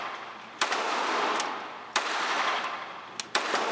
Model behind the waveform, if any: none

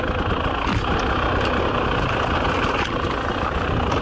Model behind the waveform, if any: none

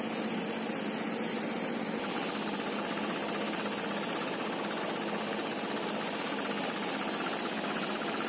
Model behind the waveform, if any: none